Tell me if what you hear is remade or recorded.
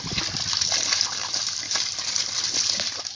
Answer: recorded